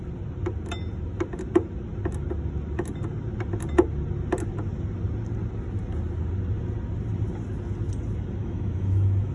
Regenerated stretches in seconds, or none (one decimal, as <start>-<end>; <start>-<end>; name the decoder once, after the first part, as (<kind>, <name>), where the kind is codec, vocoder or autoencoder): 8.4-9.3 (autoencoder, DAC-VAE)